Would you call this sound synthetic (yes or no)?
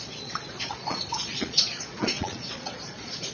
yes